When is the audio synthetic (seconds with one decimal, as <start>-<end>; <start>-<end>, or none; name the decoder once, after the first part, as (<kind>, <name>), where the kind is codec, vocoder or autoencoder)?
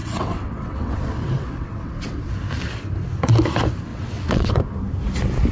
0.0-2.3 (vocoder, WaveNeXt); 3.9-4.5